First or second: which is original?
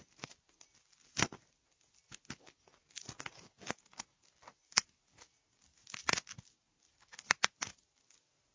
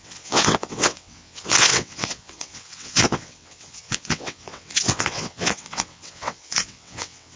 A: first